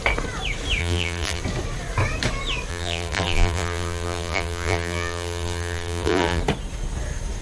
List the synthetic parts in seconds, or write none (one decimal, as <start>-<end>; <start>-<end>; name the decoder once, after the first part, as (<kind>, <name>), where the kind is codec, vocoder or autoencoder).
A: 0.8-1.4 (vocoder, BigVGAN v2); 2.7-6.4